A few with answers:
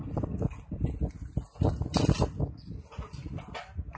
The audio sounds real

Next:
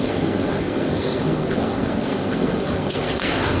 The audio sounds fake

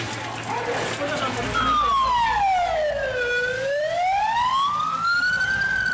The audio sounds real